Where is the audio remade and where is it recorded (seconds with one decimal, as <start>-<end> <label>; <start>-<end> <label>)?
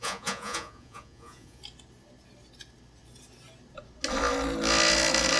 0.0-1.6 remade; 1.6-5.4 recorded